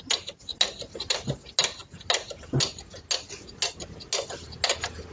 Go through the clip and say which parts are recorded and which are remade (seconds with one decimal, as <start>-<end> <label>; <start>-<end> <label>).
0.0-5.1 recorded